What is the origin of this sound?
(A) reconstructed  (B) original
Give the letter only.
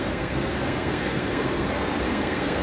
A